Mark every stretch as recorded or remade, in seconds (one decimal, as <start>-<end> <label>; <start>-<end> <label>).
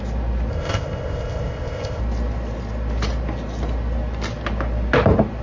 0.0-0.5 recorded; 0.5-2.0 remade; 2.0-5.4 recorded